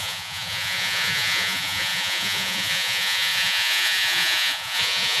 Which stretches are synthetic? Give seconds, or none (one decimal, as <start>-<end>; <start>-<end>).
0.0-5.2